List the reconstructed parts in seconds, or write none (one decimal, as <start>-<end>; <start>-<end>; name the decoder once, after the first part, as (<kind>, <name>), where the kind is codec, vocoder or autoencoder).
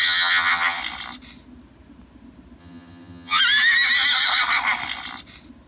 0.0-0.8 (vocoder, HiFi-GAN); 2.6-3.4